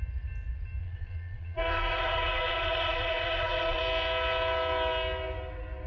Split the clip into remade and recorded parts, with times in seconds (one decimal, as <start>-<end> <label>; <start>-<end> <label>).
0.0-0.8 recorded; 0.8-3.8 remade; 3.8-5.9 recorded